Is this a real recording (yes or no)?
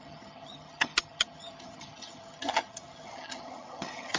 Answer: no